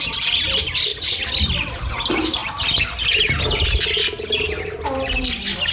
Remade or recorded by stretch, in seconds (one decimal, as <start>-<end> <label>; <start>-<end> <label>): 0.0-5.7 recorded